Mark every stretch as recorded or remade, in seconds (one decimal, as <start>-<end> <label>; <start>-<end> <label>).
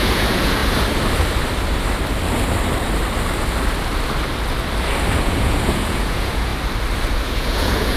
0.0-0.6 remade; 0.6-5.2 recorded; 5.2-6.5 remade; 6.5-7.1 recorded; 7.1-8.0 remade